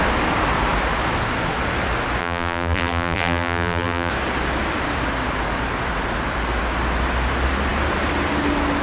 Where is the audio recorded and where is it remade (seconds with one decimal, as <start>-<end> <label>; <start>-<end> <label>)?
0.0-2.2 recorded; 2.2-4.1 remade; 4.1-8.8 recorded